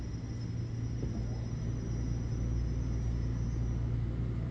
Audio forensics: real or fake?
real